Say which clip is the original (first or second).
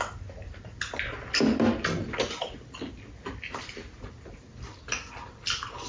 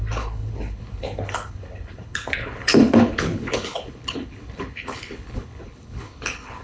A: first